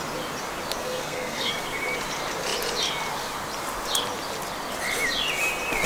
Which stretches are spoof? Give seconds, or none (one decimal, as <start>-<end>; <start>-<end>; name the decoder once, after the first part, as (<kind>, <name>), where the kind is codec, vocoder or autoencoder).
0.8-1.5 (codec, SNAC)